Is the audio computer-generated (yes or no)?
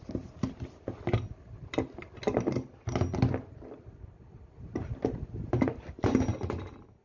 no